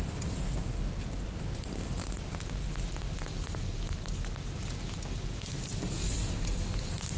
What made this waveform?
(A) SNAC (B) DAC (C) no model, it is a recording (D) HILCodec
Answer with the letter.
C